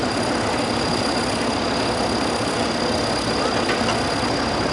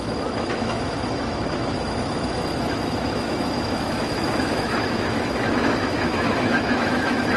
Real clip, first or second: first